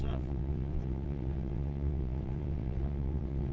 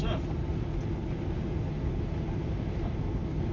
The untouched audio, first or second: second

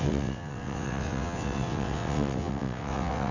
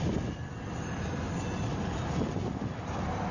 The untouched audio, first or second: second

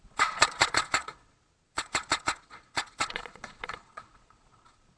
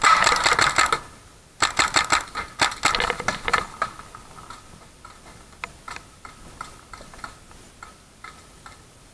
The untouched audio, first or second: second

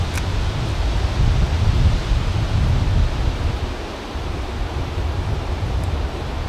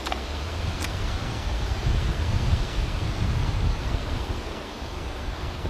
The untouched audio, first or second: first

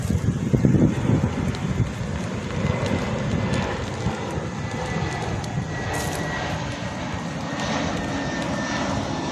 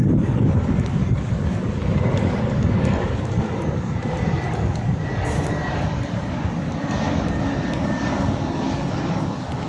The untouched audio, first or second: first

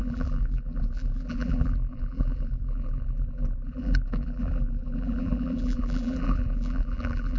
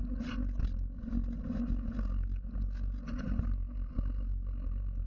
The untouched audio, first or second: second